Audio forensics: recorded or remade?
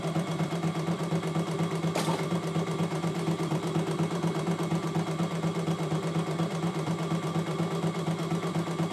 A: remade